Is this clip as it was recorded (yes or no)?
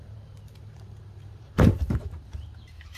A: no